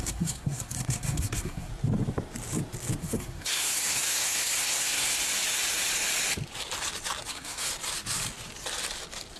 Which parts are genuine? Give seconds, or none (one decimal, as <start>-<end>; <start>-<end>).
1.7-3.0; 5.2-7.3; 7.7-9.4